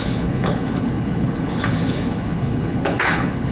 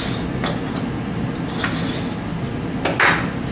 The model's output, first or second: first